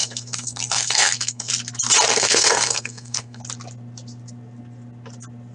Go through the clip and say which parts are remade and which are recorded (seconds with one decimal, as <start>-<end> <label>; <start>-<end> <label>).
0.0-1.5 remade; 1.5-2.1 recorded; 2.1-3.4 remade; 3.4-5.5 recorded